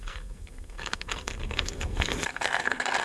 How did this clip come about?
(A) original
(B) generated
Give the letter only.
B